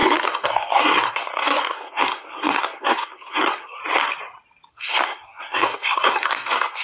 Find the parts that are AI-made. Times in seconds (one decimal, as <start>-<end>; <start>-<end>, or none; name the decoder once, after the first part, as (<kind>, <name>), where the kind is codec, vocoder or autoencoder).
0.0-3.8 (codec, SNAC); 4.7-6.8